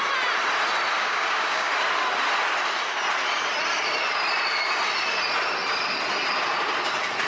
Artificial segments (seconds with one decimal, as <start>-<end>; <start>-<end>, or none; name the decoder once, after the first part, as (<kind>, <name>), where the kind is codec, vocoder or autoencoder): 1.0-1.7 (codec, DAC)